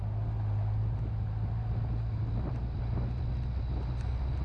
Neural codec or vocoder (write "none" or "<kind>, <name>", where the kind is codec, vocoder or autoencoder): none